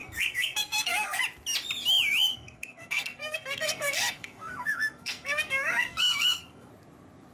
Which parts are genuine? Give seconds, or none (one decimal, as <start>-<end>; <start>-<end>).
1.2-2.3; 6.7-7.3

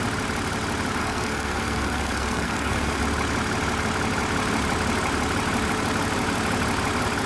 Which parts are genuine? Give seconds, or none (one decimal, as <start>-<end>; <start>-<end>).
0.0-1.0; 3.0-7.3

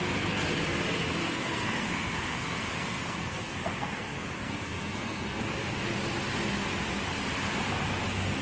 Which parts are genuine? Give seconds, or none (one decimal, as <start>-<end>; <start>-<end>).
0.0-1.2; 5.4-8.4

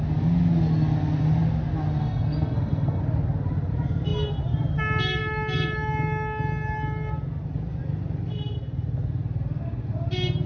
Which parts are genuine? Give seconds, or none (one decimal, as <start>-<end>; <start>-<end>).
0.0-2.0; 3.0-10.5